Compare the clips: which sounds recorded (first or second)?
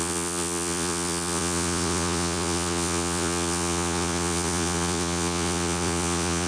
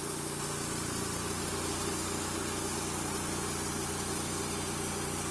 second